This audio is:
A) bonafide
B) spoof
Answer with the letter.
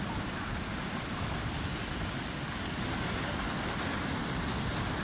A